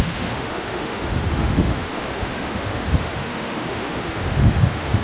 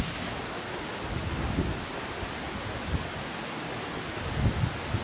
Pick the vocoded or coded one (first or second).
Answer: first